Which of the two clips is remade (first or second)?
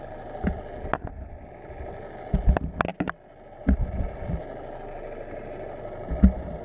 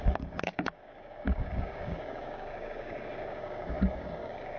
second